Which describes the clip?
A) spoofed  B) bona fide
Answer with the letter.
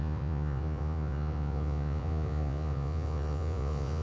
A